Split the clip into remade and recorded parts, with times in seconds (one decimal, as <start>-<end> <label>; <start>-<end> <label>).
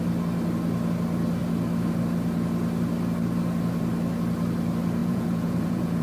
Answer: 0.0-5.0 recorded; 5.0-6.0 remade